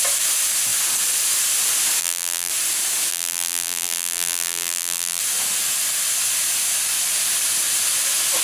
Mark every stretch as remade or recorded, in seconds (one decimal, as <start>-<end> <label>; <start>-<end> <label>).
0.0-2.0 recorded; 2.0-2.5 remade; 2.5-3.1 recorded; 3.1-5.2 remade; 5.2-8.4 recorded